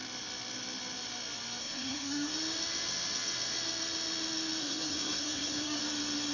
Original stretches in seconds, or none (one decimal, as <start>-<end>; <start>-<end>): 0.0-1.6; 2.3-4.6; 5.8-6.3

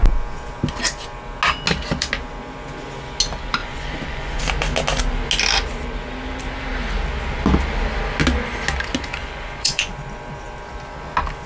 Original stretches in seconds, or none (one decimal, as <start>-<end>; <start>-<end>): 0.0-3.6; 4.4-9.2; 9.9-11.5

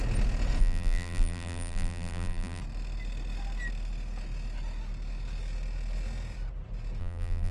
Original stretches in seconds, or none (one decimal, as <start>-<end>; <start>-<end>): 0.0-0.6; 2.6-7.0

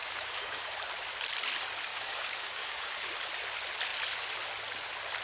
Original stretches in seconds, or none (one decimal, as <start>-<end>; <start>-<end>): 0.7-1.9; 3.1-5.2

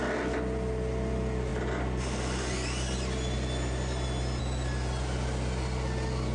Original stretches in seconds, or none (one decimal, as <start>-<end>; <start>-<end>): 0.0-6.3

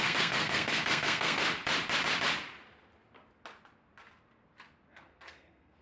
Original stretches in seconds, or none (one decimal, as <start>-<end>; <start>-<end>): 1.4-4.9

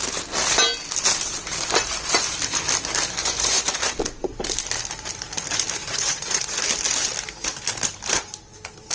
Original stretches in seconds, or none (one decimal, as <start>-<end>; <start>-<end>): 0.0-3.2; 3.8-5.8; 6.6-8.9

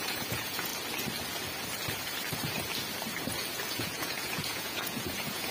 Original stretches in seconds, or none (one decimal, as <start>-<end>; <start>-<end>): 0.7-3.7